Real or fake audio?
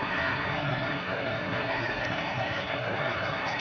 fake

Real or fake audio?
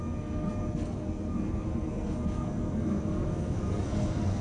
fake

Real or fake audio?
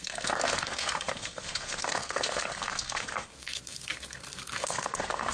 fake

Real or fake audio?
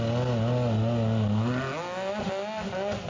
real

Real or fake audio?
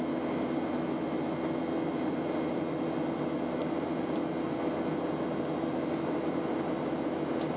real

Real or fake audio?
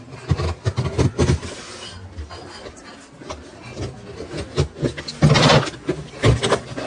real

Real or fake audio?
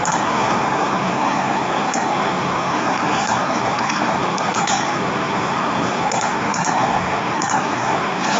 fake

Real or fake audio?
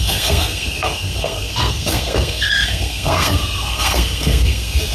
fake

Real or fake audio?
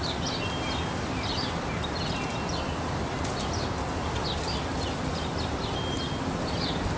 real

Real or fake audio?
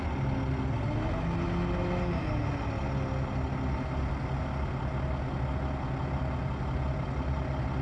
real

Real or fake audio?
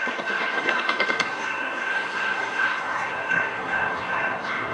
fake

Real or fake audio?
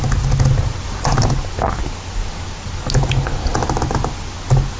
real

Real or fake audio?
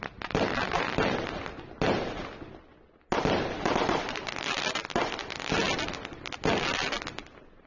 real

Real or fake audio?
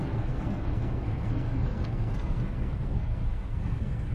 fake